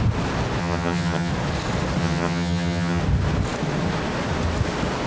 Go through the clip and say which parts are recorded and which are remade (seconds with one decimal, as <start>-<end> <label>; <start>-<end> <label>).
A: 0.0-0.6 recorded; 0.6-1.3 remade; 1.3-2.0 recorded; 2.0-3.0 remade; 3.0-5.1 recorded